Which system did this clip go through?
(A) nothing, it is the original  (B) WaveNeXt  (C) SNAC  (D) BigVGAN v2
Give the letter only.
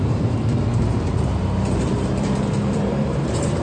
D